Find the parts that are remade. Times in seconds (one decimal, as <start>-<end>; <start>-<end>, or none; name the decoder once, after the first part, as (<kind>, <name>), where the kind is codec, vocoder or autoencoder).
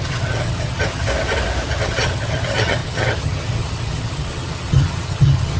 0.0-1.1 (vocoder, HiFi-GAN); 1.7-5.6